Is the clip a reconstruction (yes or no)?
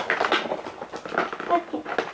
no